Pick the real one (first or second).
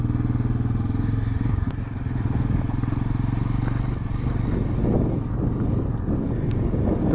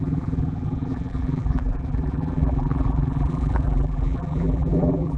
first